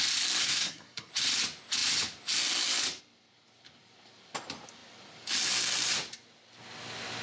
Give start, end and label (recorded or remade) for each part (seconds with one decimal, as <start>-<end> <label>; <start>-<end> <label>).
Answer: 0.0-0.4 recorded; 0.4-1.1 remade; 1.1-7.2 recorded